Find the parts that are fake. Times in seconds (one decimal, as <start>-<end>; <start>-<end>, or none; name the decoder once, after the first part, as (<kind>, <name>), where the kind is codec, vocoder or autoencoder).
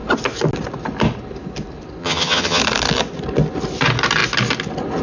2.0-2.6 (vocoder, HiFi-GAN)